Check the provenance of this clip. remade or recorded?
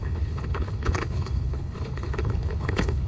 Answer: remade